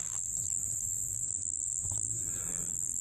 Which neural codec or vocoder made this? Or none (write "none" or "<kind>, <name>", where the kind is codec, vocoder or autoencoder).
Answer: vocoder, BigVGAN v2